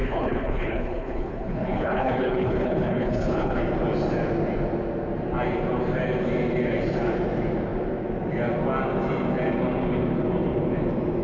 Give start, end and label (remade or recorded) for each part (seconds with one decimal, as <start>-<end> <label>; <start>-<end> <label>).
0.0-3.6 remade; 3.6-11.2 recorded